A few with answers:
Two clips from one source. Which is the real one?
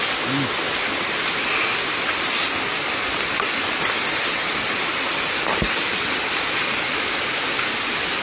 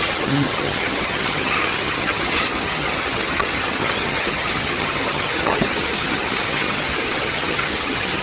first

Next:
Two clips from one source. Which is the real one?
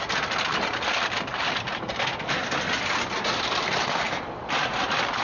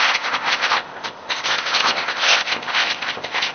first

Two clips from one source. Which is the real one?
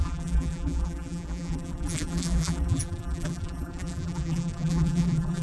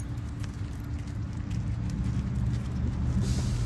second